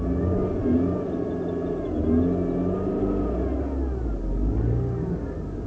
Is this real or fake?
real